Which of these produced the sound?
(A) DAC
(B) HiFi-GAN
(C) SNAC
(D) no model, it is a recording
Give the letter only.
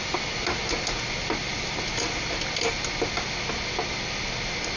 D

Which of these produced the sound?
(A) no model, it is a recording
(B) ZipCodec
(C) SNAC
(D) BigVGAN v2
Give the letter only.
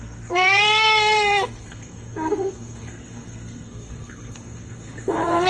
C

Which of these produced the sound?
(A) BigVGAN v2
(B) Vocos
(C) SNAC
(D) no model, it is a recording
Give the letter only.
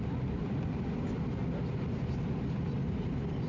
D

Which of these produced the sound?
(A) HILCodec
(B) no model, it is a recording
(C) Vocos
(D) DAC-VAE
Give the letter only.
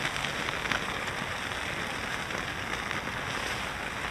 B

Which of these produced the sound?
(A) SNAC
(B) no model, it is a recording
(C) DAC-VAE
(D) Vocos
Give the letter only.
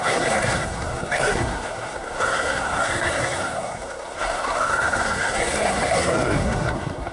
A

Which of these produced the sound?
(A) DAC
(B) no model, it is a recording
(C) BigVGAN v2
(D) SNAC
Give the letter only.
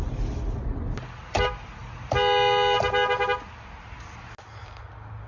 B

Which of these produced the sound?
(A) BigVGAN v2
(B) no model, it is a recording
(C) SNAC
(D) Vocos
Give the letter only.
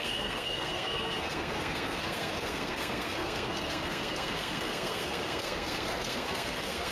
C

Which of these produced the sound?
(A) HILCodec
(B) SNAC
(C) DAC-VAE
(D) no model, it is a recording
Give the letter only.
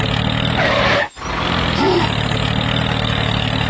D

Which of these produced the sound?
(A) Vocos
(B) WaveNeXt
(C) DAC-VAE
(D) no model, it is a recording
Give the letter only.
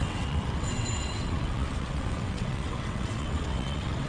B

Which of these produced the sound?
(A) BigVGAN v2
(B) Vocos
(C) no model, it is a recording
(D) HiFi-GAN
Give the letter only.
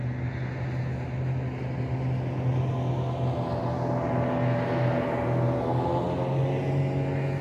C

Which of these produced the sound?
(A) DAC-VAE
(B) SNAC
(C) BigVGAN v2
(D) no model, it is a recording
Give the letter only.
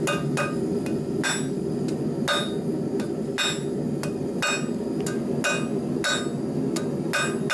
D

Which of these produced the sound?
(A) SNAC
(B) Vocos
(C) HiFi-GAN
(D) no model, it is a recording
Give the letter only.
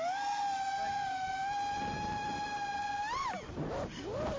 D